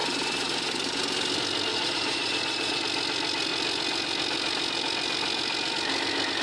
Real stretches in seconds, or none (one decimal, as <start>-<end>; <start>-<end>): 1.0-1.7; 2.8-6.4